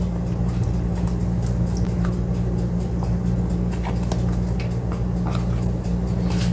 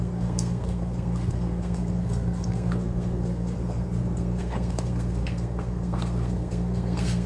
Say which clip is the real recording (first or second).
first